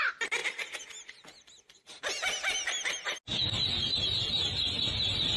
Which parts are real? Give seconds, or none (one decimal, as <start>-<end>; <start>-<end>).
0.0-5.4